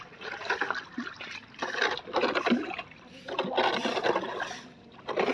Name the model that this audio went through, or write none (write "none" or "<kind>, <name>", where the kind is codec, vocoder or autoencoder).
none